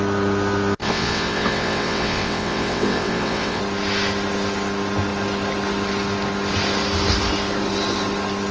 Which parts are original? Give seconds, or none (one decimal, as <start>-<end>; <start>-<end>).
0.0-0.8; 3.6-8.5